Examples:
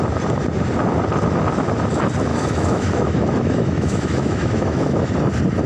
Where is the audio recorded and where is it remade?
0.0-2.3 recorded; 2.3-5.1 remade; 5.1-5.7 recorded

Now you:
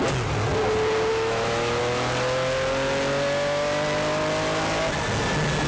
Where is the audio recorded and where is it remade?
0.0-1.1 recorded; 1.1-1.8 remade; 1.8-5.7 recorded

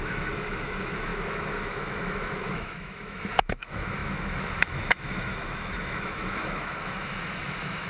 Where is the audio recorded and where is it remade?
0.0-7.9 remade